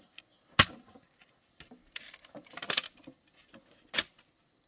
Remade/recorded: recorded